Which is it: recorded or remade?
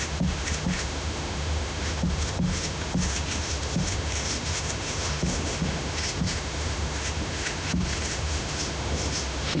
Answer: remade